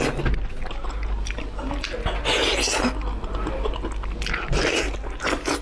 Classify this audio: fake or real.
real